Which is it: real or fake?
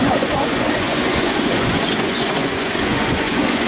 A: fake